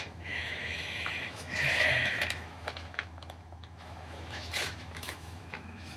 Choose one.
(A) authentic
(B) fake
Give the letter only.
B